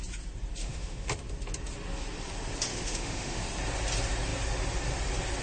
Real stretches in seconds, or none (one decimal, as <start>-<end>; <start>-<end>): 0.0-0.6; 1.1-2.7; 3.4-5.4